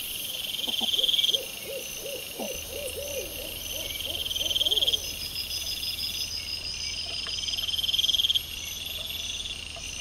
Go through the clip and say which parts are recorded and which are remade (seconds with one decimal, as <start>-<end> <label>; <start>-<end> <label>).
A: 0.0-10.0 recorded